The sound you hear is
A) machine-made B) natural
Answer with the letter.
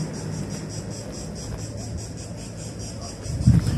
B